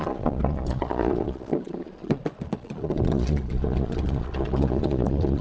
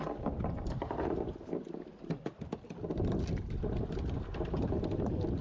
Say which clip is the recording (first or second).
second